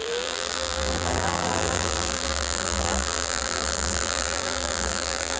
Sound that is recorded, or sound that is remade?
remade